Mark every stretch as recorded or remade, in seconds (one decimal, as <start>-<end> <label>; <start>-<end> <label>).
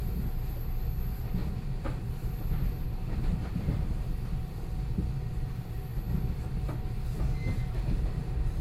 0.0-1.4 recorded; 1.4-2.3 remade; 2.3-4.1 recorded; 4.1-5.3 remade; 5.3-8.6 recorded